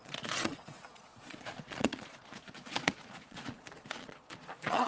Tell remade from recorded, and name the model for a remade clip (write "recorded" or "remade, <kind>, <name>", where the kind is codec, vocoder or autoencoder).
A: remade, vocoder, Vocos